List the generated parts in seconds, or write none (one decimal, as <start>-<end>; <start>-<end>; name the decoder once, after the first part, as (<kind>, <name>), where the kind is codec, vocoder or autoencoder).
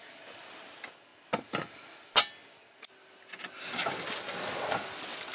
none